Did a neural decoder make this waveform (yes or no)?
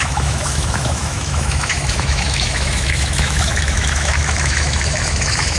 yes